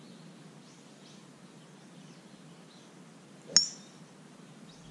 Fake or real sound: real